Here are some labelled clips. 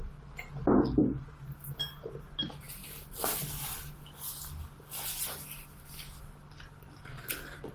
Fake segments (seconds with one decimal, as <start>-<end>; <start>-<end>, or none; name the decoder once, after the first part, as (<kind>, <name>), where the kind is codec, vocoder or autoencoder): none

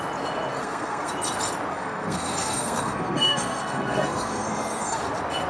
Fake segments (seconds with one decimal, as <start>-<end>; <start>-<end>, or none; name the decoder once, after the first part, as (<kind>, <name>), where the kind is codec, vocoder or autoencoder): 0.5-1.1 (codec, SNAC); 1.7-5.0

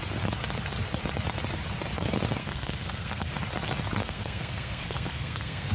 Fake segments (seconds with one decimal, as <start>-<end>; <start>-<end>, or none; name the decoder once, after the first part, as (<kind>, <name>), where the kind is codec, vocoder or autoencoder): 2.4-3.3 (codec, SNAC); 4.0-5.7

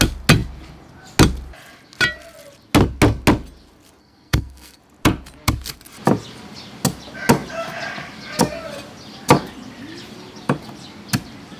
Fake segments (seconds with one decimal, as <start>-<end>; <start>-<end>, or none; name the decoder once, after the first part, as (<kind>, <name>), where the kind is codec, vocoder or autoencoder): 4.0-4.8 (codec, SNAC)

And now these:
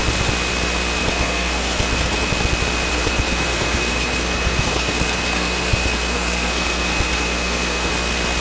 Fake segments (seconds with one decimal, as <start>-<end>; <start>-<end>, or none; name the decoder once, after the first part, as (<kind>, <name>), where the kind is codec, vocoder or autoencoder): 1.0-2.3 (codec, SNAC); 2.9-7.9

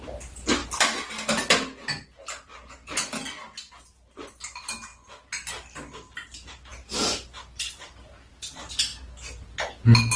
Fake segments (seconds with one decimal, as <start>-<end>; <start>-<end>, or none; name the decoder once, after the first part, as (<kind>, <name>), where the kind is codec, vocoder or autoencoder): none

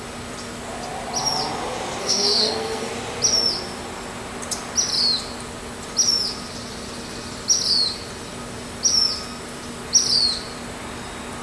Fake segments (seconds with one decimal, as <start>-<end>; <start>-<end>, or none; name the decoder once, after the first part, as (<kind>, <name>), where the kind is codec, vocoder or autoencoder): 2.0-2.9 (codec, SNAC)